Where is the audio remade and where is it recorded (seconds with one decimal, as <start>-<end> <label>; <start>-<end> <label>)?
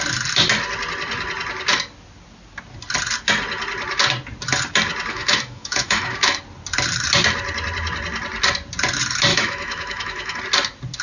0.0-5.1 recorded; 5.1-6.4 remade; 6.4-9.3 recorded; 9.3-10.4 remade; 10.4-11.0 recorded